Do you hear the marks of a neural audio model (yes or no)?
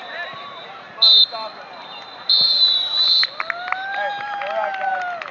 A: yes